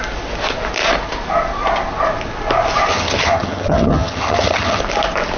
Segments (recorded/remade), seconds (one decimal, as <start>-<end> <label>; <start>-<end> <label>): 0.0-2.9 recorded; 2.9-4.8 remade; 4.8-5.4 recorded